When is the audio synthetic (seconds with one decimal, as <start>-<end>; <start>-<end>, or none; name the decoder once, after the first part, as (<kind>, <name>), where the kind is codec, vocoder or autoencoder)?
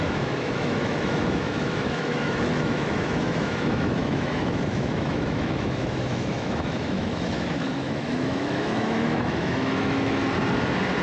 0.0-10.2 (autoencoder, DAC-VAE)